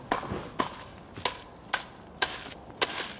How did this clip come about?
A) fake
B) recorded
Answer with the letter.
B